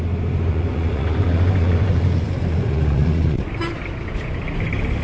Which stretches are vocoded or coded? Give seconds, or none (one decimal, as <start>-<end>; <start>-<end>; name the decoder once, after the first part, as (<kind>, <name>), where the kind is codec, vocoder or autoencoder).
0.5-3.5 (vocoder, Vocos)